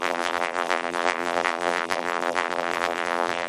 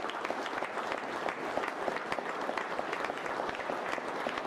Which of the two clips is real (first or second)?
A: second